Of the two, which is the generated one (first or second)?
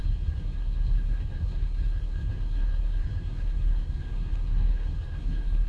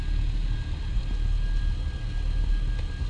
first